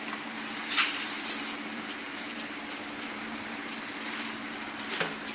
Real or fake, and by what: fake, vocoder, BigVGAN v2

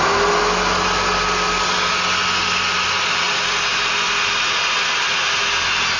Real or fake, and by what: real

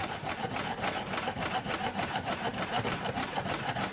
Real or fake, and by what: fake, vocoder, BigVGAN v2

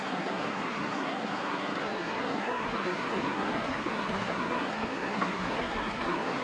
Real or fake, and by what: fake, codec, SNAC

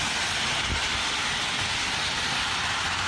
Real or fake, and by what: real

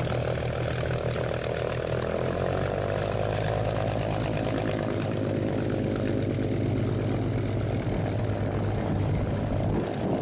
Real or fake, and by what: real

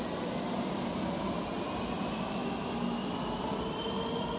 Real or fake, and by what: real